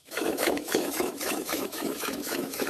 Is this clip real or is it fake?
fake